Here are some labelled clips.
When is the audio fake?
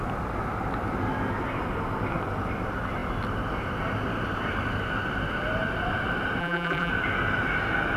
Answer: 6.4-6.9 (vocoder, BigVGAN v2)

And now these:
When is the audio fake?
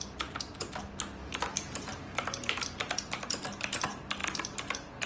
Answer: 1.2-2.5 (vocoder, BigVGAN v2)